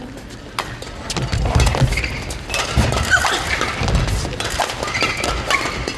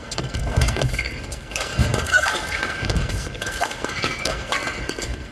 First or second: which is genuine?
first